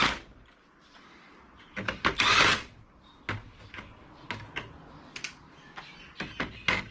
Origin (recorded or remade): recorded